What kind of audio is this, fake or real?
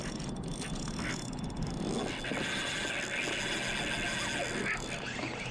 real